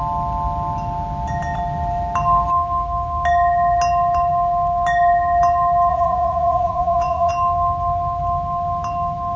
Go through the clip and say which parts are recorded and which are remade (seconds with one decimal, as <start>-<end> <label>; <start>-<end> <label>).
0.0-5.9 recorded; 5.9-7.3 remade; 7.3-9.4 recorded